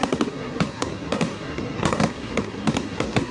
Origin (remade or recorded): remade